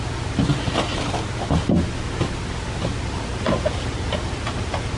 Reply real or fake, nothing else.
real